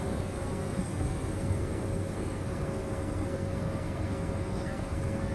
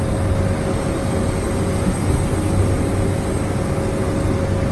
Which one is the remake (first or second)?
first